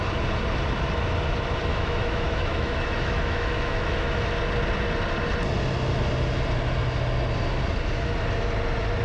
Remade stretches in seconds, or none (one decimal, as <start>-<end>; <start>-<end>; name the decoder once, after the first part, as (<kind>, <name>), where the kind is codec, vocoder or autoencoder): 1.7-4.3 (autoencoder, DAC-VAE)